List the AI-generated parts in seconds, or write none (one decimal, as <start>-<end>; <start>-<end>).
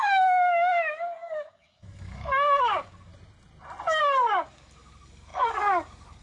0.0-3.1; 4.0-6.2